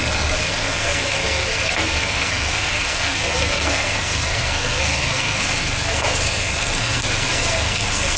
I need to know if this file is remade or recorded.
remade